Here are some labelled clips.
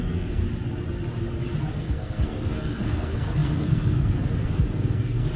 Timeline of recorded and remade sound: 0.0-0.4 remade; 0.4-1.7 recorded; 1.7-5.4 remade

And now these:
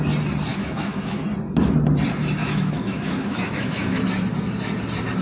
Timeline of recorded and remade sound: 0.0-0.5 recorded; 0.5-1.2 remade; 1.2-2.4 recorded; 2.4-4.0 remade; 4.0-5.2 recorded

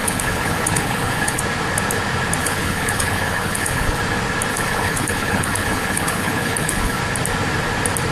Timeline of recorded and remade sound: 0.0-1.4 remade; 1.4-2.4 recorded; 2.4-4.0 remade; 4.0-4.5 recorded; 4.5-7.0 remade; 7.0-8.1 recorded

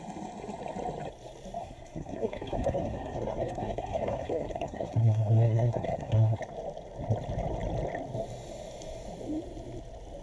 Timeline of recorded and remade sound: 0.0-1.6 recorded; 1.6-6.4 remade; 6.4-10.2 recorded